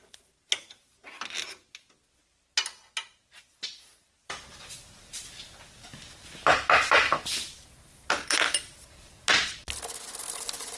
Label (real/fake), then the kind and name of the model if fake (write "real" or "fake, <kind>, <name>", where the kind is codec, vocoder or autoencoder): real